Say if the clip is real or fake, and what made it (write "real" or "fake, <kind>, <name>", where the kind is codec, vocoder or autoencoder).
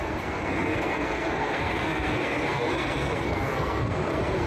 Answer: fake, codec, SNAC